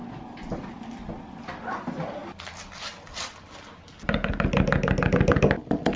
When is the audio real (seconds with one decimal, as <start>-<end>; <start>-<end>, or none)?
0.0-6.0